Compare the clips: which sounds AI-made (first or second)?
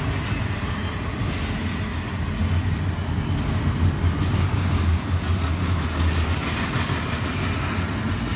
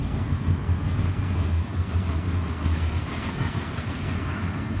second